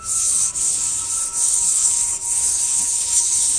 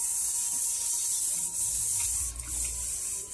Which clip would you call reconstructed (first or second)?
first